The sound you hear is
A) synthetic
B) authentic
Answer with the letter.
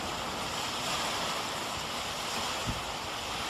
B